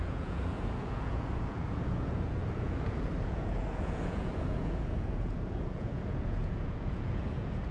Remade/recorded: remade